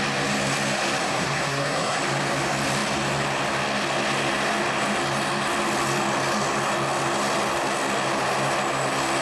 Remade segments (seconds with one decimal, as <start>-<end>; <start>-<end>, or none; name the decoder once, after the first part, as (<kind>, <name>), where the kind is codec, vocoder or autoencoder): 1.0-2.0 (codec, SNAC)